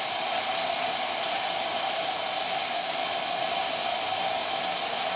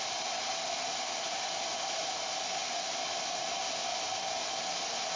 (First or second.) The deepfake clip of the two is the first